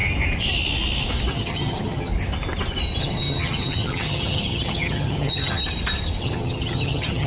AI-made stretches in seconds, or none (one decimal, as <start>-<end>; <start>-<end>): 1.3-2.1; 3.0-5.6; 6.2-7.3